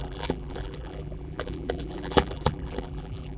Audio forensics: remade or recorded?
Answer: remade